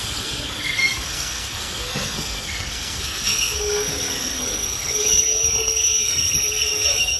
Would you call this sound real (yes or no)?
no